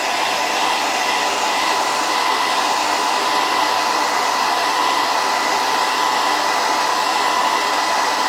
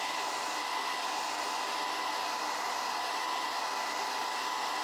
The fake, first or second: first